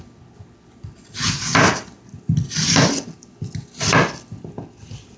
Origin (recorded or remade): recorded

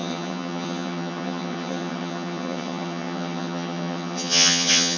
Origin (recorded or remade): remade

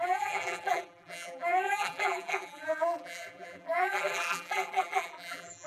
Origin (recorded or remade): remade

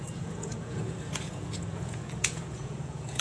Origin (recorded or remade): remade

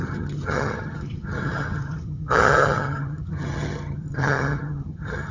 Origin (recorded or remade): remade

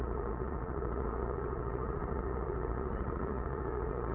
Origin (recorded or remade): remade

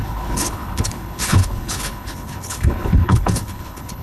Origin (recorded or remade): remade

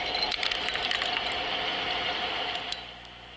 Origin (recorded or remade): recorded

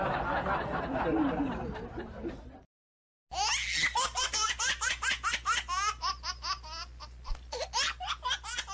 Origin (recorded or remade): recorded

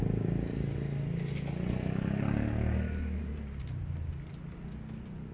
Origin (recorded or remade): recorded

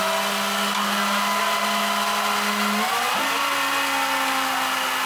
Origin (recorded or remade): recorded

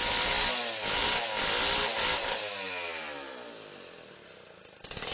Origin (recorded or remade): recorded